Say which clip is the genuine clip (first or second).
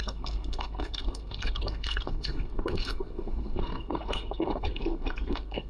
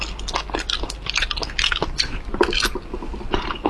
second